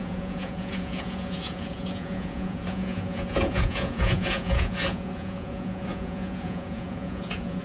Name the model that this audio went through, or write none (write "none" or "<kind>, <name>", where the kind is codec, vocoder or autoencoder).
vocoder, Vocos